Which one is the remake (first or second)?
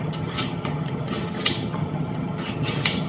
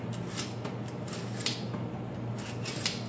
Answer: first